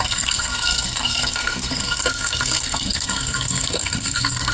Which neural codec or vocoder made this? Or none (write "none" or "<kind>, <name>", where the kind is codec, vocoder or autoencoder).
codec, SNAC